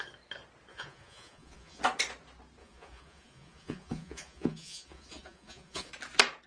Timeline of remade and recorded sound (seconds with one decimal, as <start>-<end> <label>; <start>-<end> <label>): 0.0-0.7 recorded; 0.7-1.8 remade; 1.8-2.6 recorded; 2.6-5.9 remade; 5.9-6.5 recorded